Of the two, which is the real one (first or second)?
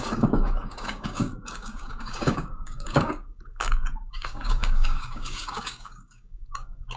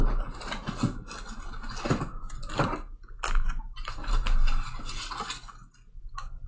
second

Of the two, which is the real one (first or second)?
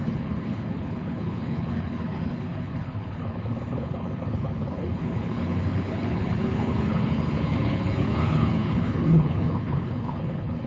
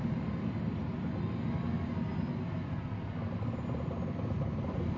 second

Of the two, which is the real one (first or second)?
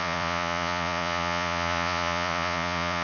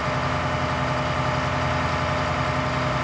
second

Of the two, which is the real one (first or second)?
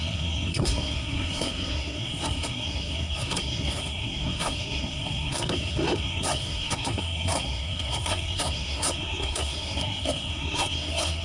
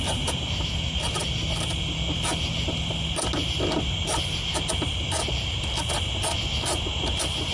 second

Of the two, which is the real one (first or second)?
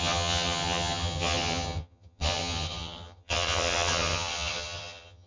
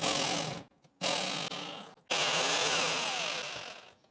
second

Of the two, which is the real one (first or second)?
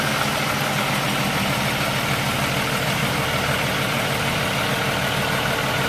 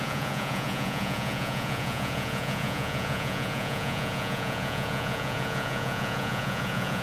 first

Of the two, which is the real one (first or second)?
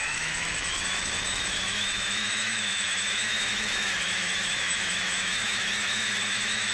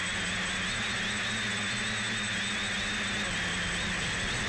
second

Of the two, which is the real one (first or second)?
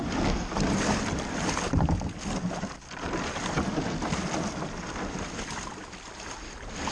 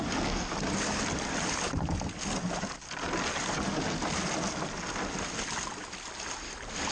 second